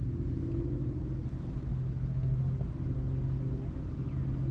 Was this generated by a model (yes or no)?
no